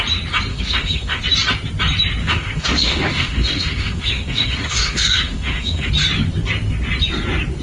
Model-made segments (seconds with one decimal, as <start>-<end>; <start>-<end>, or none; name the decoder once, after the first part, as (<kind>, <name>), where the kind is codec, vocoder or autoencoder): 0.5-1.2 (autoencoder, DAC-VAE); 2.2-5.9